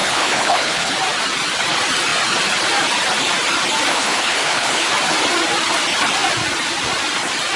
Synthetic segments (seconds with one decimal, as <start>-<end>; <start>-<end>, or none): 0.0-0.9; 3.9-4.9